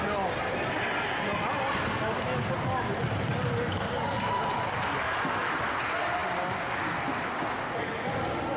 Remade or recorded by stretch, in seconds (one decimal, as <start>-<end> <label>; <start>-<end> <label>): 0.0-8.6 recorded